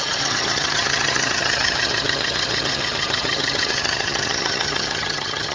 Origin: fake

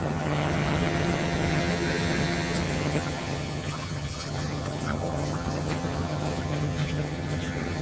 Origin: fake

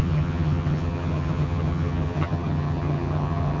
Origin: fake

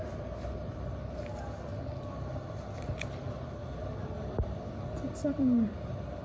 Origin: real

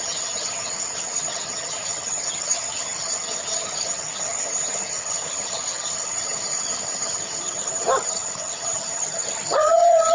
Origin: fake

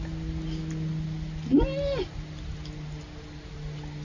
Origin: real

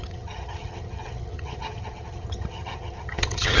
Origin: fake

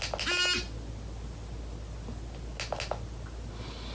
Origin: real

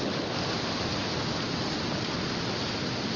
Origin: real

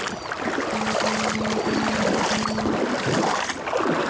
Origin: real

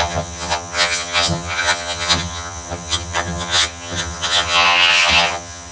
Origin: fake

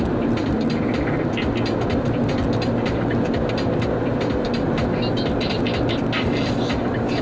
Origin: real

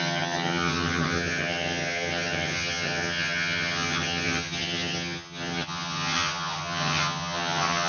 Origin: fake